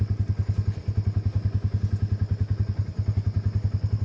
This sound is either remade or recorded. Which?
recorded